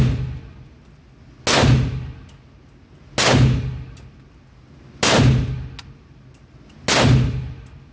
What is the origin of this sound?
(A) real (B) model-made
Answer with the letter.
A